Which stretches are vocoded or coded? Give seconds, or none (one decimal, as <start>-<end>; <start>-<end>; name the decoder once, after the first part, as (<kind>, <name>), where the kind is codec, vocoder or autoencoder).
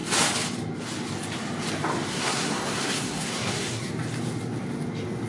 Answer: 2.1-3.9 (codec, SNAC)